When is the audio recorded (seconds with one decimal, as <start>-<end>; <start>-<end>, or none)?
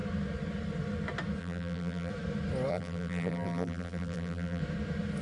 0.0-1.4; 2.1-2.7; 4.6-5.2